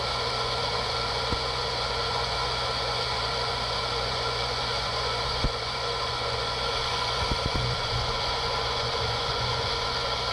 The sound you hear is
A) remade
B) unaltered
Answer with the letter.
A